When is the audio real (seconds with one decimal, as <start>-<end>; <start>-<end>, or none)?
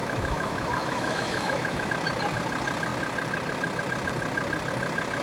1.9-5.2